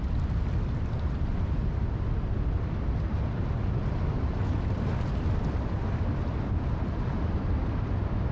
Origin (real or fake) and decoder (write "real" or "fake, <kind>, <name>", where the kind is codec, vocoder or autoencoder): real